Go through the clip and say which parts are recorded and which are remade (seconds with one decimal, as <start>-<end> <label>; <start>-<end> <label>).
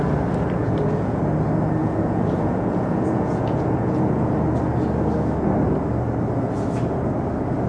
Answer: 0.0-0.6 recorded; 0.6-1.2 remade; 1.2-1.8 recorded; 1.8-4.3 remade; 4.3-7.7 recorded